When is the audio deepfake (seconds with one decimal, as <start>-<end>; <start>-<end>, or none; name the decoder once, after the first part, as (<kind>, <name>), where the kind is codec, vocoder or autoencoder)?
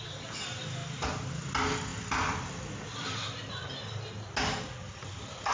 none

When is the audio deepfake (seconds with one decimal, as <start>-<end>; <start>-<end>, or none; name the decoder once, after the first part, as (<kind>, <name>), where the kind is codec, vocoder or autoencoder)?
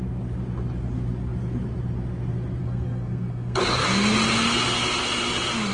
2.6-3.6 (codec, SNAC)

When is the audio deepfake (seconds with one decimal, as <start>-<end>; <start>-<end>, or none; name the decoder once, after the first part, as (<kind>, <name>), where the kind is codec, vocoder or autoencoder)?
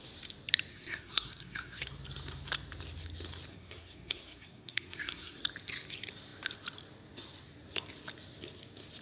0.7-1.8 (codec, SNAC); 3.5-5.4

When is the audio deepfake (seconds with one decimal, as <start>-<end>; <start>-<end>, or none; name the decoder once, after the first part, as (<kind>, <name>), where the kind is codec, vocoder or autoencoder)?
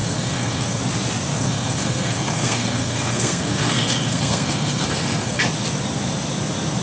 0.0-0.8 (codec, SNAC); 1.3-5.4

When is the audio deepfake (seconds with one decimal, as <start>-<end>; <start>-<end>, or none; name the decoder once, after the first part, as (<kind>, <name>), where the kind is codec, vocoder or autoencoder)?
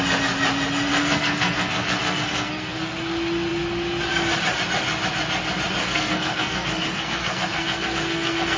0.9-2.9 (codec, SNAC); 5.8-8.6